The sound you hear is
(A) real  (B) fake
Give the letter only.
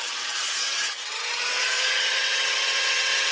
B